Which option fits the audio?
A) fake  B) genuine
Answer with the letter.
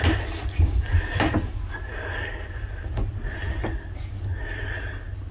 B